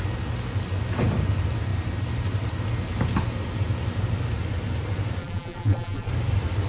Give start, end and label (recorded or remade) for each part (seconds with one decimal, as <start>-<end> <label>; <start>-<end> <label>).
0.0-5.2 recorded; 5.2-6.1 remade; 6.1-6.7 recorded